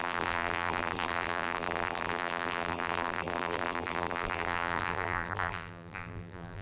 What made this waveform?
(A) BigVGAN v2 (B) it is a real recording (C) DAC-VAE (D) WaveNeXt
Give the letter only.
A